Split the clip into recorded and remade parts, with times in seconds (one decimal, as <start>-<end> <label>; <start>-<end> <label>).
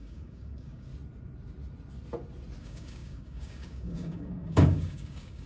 0.0-0.9 remade; 0.9-2.6 recorded; 2.6-5.5 remade